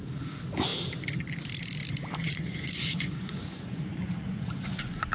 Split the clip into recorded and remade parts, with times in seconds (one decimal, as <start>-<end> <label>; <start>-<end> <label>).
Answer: 0.0-2.2 recorded; 2.2-5.1 remade